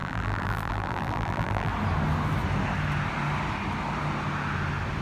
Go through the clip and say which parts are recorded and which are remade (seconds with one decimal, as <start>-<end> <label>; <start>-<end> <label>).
0.0-1.7 remade; 1.7-5.0 recorded